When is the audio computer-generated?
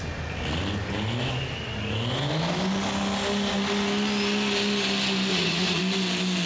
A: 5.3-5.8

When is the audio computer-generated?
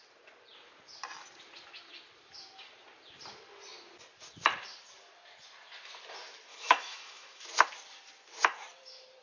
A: 6.5-7.4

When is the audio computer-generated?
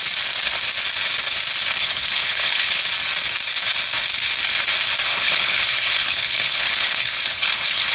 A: 1.8-2.8; 5.1-7.9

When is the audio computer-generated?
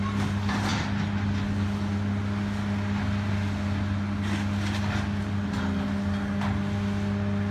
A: none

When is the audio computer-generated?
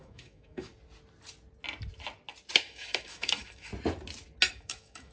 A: 0.0-0.7; 2.6-3.7; 4.5-5.1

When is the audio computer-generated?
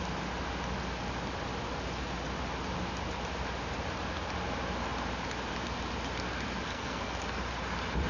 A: 6.7-7.4